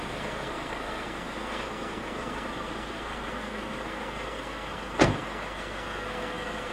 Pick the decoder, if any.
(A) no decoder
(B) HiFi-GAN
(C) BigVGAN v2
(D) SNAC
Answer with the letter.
D